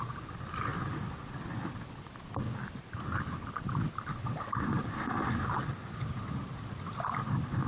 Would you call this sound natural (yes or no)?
yes